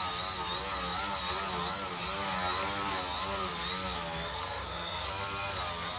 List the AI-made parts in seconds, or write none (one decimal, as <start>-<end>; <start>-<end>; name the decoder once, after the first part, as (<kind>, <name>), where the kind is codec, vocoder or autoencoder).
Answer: 4.3-5.1 (codec, SNAC)

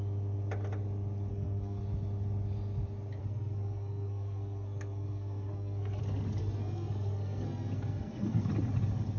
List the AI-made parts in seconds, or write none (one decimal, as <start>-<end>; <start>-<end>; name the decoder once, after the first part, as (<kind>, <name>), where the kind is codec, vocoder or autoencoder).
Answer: 1.3-1.8 (codec, SNAC); 3.2-6.0; 6.4-8.5

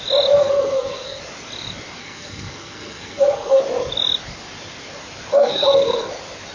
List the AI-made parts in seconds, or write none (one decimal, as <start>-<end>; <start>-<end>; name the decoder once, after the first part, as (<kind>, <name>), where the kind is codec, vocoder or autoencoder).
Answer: 0.4-1.2 (codec, SNAC); 2.0-3.6; 5.3-6.1

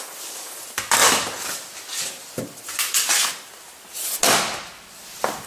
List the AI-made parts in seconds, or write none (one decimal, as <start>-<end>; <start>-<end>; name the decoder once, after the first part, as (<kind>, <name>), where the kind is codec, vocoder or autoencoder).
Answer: none

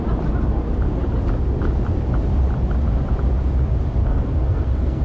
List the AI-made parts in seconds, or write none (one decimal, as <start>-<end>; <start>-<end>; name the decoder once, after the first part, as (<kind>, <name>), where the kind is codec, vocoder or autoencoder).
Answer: 4.0-5.0 (codec, SNAC)

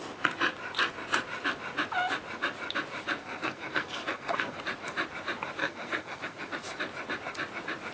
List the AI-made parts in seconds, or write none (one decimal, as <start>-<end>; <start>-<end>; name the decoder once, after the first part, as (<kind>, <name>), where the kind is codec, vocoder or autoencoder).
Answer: 3.2-4.6 (codec, SNAC); 5.6-6.8